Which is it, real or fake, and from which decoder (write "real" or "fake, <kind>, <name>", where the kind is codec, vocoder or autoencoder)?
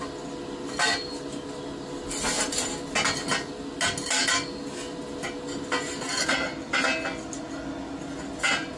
real